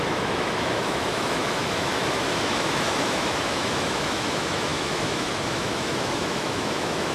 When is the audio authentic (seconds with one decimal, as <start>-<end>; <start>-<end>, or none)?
none

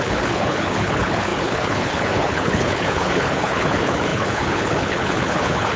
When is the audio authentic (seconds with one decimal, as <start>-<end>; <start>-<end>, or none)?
none

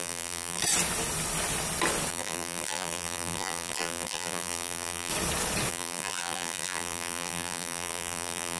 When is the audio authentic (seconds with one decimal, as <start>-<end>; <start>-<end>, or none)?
0.6-2.1; 5.1-5.7

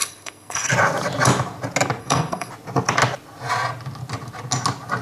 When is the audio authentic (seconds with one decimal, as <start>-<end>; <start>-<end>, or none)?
0.7-2.0; 2.5-5.0

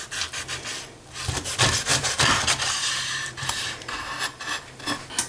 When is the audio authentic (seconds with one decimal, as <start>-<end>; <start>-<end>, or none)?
0.0-1.9; 3.8-5.3